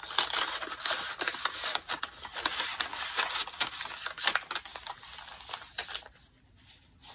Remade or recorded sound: recorded